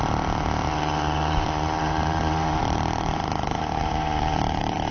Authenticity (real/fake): fake